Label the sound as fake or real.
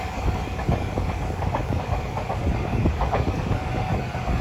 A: fake